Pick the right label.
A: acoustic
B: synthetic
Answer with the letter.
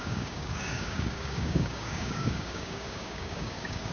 B